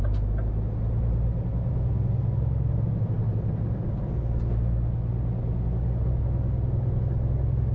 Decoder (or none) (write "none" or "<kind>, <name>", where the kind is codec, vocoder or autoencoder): none